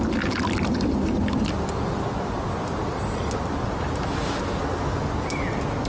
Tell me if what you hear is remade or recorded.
recorded